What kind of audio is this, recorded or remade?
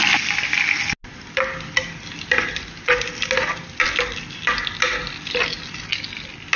recorded